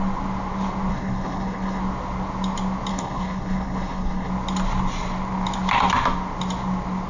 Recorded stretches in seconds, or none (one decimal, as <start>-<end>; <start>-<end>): 0.0-0.9; 1.8-2.9; 4.3-7.1